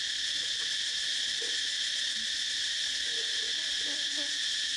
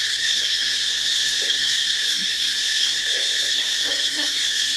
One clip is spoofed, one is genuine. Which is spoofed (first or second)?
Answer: second